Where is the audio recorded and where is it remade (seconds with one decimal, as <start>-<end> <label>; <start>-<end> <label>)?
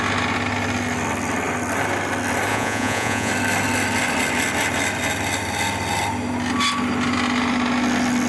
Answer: 0.0-2.5 recorded; 2.5-3.3 remade; 3.3-8.3 recorded